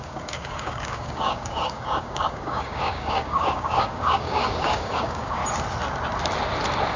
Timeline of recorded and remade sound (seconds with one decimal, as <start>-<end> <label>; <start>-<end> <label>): 0.0-5.4 remade; 5.4-7.0 recorded